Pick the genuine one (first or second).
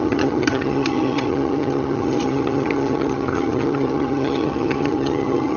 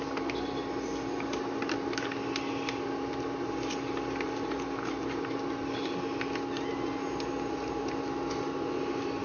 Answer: second